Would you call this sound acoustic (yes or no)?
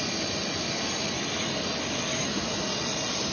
yes